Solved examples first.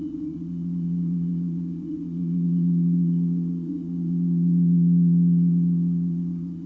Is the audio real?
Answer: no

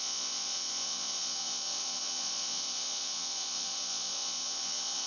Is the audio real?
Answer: no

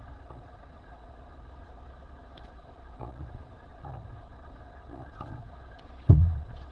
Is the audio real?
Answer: no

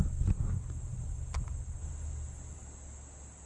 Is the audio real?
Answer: yes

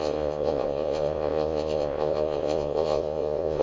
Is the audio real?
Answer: no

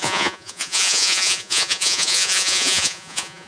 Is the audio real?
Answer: no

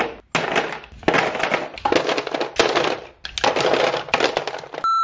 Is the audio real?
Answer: yes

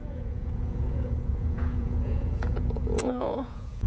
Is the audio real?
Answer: no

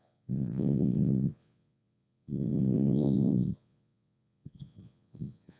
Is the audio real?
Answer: no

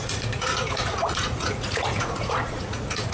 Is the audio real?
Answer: no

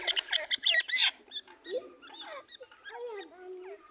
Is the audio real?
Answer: yes